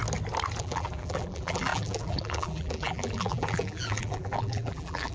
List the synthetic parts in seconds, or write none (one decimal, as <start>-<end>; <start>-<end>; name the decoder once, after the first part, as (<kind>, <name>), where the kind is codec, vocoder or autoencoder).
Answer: 0.6-5.1 (vocoder, BigVGAN v2)